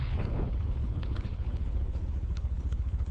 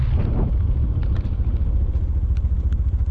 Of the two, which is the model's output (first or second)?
first